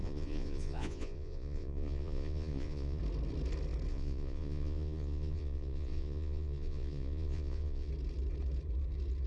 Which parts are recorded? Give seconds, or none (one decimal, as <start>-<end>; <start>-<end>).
3.0-3.9; 7.9-9.3